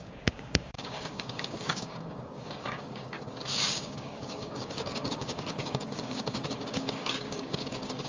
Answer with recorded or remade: remade